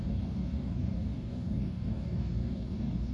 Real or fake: fake